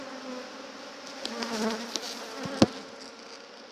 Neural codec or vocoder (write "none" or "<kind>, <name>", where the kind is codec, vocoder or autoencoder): none